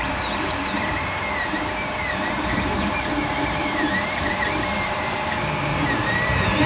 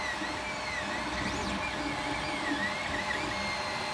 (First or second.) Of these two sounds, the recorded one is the second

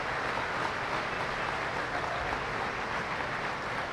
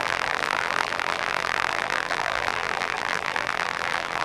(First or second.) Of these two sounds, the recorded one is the first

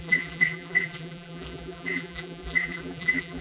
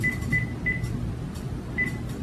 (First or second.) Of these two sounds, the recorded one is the second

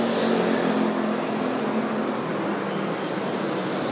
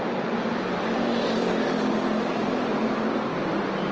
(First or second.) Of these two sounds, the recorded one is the first